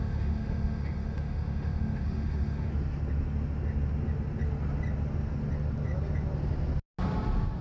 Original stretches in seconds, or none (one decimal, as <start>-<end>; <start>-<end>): 2.7-7.6